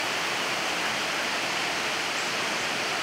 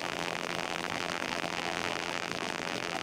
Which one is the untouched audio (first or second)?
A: first